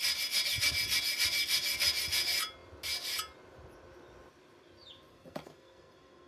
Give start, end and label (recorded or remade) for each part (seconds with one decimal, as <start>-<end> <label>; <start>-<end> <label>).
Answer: 0.0-5.1 recorded; 5.1-6.3 remade